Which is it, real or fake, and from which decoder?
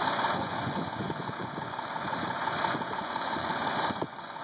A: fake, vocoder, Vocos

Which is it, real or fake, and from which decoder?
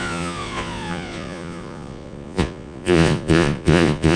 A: fake, vocoder, Vocos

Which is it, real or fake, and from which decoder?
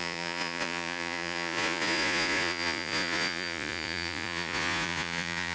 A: fake, vocoder, Vocos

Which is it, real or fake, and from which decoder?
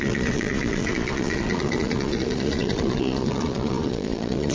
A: fake, vocoder, Vocos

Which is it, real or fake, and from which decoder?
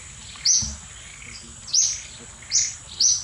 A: real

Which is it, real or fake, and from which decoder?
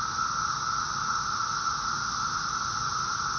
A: real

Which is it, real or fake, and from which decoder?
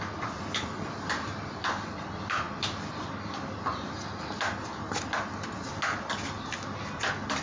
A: real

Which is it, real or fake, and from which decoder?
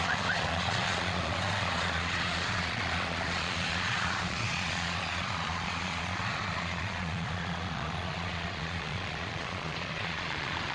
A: fake, vocoder, Vocos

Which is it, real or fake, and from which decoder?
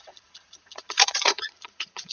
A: fake, vocoder, Vocos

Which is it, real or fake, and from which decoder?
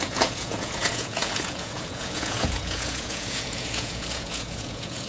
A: fake, vocoder, Vocos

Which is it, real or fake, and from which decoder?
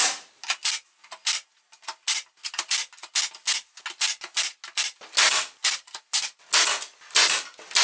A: real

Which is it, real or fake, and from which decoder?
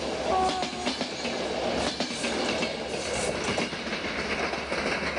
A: real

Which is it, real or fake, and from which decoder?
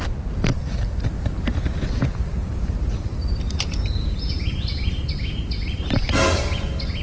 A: real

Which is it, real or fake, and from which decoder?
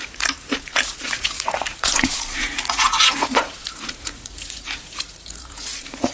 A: fake, vocoder, Vocos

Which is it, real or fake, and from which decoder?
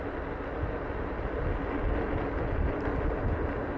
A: real